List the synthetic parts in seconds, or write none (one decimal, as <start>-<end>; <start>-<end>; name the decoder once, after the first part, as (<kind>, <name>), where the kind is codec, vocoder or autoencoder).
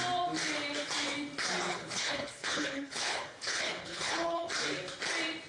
1.7-4.5 (codec, HILCodec)